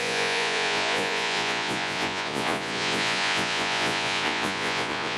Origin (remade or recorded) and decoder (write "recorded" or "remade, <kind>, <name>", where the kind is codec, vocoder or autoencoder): remade, vocoder, Vocos